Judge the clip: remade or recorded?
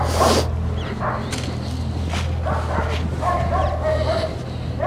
recorded